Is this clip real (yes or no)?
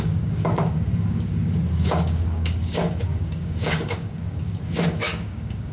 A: no